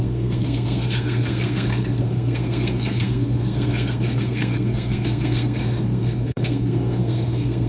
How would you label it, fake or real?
fake